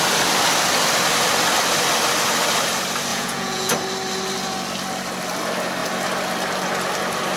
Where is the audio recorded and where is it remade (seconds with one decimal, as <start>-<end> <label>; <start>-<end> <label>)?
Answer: 0.0-3.1 recorded; 3.1-3.7 remade; 3.7-7.4 recorded

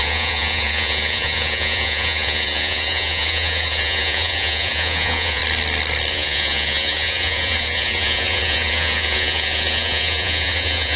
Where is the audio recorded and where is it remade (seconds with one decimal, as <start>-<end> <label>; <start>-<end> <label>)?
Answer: 0.0-5.4 remade; 5.4-6.1 recorded; 6.1-11.0 remade

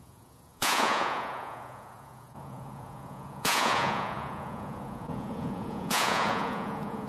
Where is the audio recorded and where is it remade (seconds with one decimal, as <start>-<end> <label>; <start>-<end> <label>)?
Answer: 0.0-7.1 remade